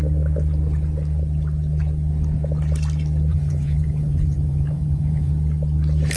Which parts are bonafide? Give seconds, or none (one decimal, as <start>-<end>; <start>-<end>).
0.0-3.3; 5.3-6.2